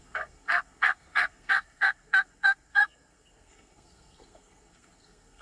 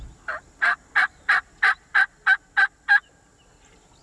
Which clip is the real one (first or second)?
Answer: second